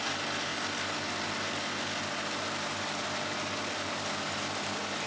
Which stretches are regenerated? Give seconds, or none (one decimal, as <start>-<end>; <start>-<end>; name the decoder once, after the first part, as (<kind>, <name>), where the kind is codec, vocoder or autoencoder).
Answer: none